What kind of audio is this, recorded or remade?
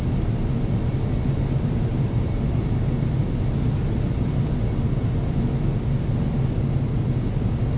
recorded